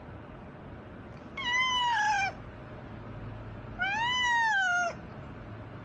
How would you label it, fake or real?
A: real